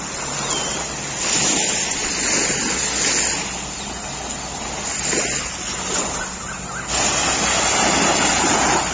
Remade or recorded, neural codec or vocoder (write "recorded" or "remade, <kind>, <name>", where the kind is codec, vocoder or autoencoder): recorded